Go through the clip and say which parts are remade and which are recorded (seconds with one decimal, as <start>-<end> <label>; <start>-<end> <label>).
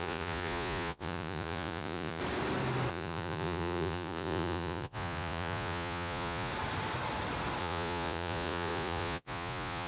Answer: 0.0-2.2 remade; 2.2-2.9 recorded; 2.9-6.5 remade; 6.5-7.6 recorded; 7.6-9.9 remade